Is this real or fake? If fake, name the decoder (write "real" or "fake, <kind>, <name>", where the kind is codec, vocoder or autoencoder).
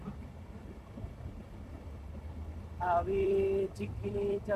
fake, vocoder, BigVGAN v2